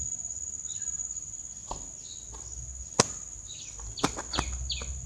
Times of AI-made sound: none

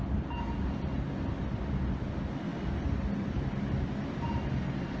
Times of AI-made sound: none

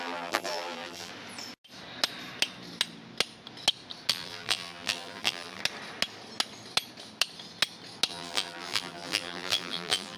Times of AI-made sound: 0.0-1.1 (vocoder, BigVGAN v2); 4.1-5.6; 8.1-10.2